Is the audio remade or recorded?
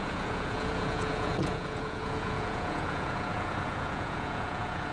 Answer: remade